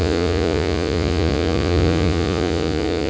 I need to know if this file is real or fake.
fake